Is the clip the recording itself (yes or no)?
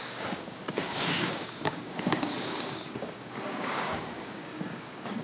no